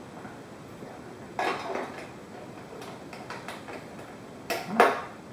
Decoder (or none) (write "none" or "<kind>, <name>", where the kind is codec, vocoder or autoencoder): none